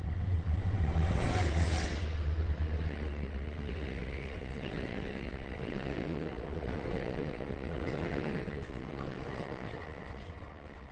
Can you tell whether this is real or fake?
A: fake